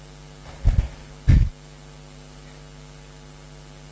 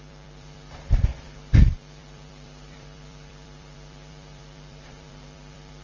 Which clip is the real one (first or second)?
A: first